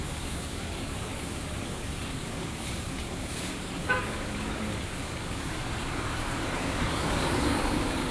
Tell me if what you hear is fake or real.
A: fake